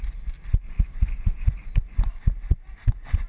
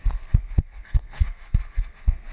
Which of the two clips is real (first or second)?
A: first